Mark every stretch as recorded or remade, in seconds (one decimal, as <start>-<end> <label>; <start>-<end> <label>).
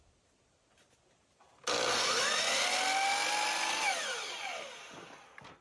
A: 0.0-5.6 recorded